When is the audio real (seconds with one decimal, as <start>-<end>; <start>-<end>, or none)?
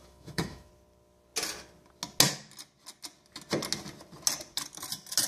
0.7-5.3